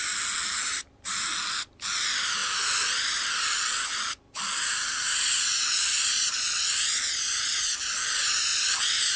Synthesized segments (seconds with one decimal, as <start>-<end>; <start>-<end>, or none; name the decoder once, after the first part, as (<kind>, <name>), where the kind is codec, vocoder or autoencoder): none